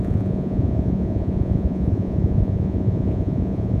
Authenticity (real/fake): fake